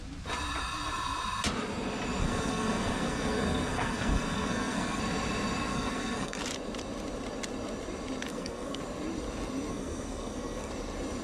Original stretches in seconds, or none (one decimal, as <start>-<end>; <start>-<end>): 0.0-2.2; 5.0-5.7; 6.4-8.3; 8.8-9.7; 10.7-11.2

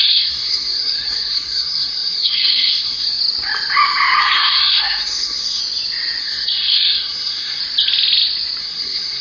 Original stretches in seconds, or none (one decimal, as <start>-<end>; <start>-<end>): 3.2-4.2; 5.6-6.2; 7.6-8.6

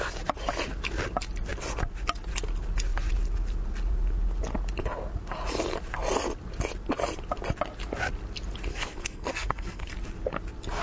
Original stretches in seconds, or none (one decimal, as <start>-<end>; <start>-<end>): 0.0-8.7; 9.9-10.8

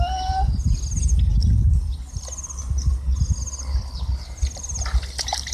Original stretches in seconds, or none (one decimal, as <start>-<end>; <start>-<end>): 0.0-5.5

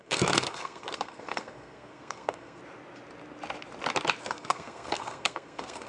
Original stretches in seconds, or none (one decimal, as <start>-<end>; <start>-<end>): 2.6-4.2